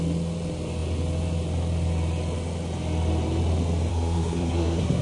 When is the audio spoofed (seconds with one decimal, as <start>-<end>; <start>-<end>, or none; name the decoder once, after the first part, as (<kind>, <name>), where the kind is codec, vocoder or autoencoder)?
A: 3.9-5.0 (codec, SNAC)